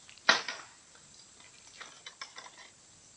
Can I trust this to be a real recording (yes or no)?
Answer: yes